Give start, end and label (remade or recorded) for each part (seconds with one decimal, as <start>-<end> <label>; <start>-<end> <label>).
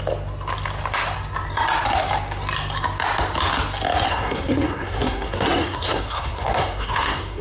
0.0-4.1 recorded; 4.1-7.4 remade